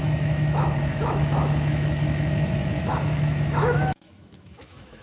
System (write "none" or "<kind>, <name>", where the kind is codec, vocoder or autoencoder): autoencoder, DAC-VAE